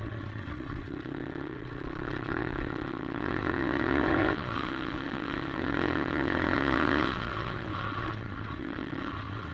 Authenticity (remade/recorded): remade